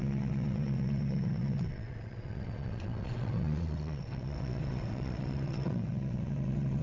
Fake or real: fake